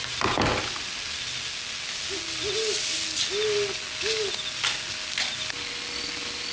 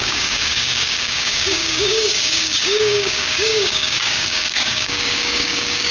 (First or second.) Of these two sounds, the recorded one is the first